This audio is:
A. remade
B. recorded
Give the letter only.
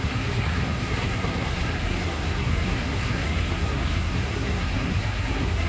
A